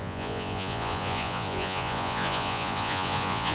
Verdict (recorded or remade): remade